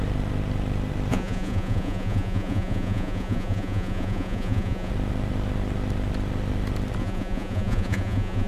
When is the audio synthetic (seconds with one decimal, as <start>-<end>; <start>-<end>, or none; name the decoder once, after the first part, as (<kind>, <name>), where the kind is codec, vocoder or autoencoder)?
1.1-4.9 (vocoder, Vocos); 7.0-8.5